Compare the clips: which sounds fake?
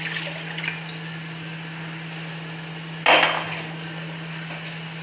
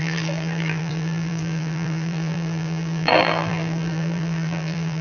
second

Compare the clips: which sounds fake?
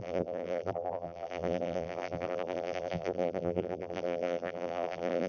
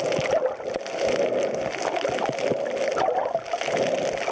first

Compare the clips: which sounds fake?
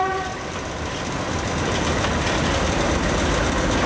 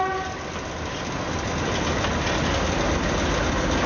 first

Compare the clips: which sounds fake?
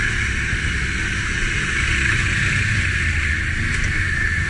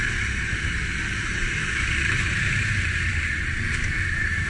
second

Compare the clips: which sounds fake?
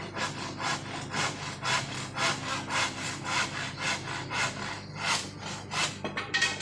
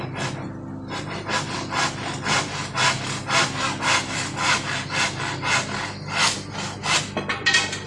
first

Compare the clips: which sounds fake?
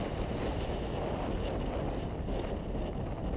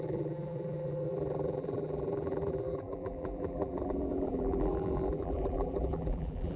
second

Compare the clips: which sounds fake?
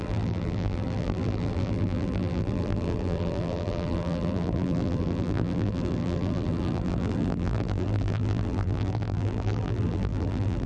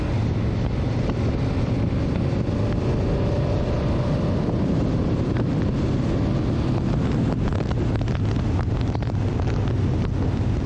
first